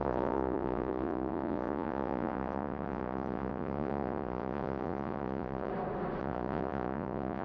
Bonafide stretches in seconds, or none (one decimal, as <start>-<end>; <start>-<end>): 5.7-6.2